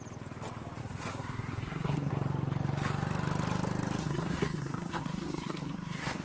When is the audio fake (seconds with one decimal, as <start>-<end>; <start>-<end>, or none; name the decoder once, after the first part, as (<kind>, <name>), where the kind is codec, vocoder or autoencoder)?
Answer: 0.8-2.1 (codec, SNAC); 4.0-6.2